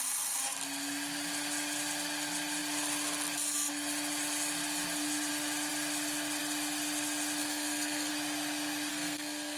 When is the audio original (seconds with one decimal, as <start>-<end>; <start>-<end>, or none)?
0.0-7.4; 8.1-8.9